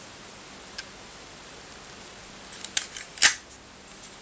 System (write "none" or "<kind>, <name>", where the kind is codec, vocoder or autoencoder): none